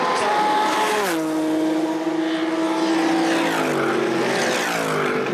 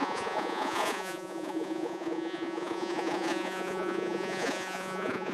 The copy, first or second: second